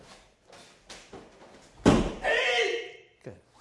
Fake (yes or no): no